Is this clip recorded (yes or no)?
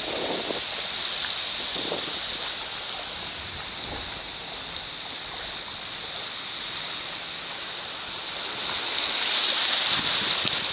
yes